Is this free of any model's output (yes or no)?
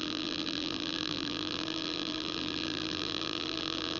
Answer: no